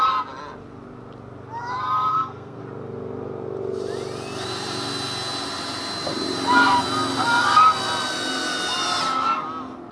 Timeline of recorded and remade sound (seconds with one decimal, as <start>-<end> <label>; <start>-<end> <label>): 0.0-2.1 recorded; 2.1-2.6 remade; 2.6-9.9 recorded